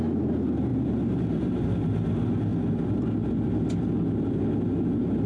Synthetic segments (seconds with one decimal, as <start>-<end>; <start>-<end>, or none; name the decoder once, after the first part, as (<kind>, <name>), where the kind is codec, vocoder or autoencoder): 0.7-2.1 (vocoder, BigVGAN v2)

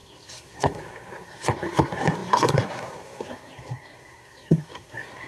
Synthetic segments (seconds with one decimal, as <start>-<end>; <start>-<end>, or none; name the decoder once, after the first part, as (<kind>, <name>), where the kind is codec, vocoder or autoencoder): 0.0-5.3 (codec, SNAC)

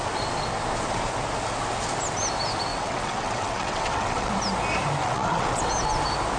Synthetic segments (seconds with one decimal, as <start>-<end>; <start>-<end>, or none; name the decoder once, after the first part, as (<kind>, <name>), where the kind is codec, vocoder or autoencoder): 2.7-4.3 (vocoder, WaveNeXt); 5.0-5.6